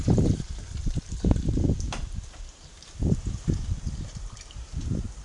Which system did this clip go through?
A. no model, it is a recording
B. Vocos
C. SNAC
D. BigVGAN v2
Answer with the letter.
D